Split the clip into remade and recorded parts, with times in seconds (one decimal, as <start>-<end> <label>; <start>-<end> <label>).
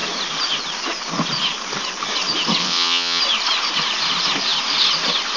0.0-2.6 recorded; 2.6-3.2 remade; 3.2-5.4 recorded